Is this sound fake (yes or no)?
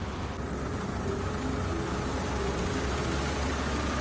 no